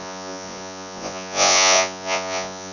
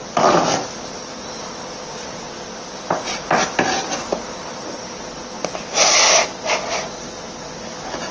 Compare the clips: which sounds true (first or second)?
second